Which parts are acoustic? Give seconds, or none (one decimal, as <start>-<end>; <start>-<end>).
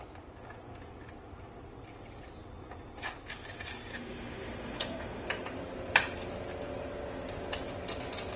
0.0-3.9; 5.3-8.4